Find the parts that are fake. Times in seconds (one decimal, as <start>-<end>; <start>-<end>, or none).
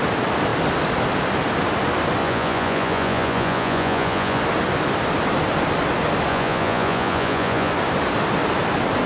2.2-4.4; 6.3-7.7